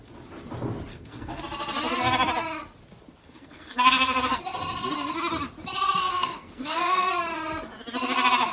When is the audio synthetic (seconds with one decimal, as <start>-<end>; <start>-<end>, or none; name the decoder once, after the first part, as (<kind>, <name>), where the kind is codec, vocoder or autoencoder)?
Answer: 0.9-1.4 (codec, SNAC); 3.2-4.4; 6.0-7.1